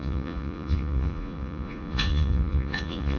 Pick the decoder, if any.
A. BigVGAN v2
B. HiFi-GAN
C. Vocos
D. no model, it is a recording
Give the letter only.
C